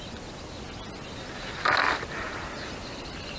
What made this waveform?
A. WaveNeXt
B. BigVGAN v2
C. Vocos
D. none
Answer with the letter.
D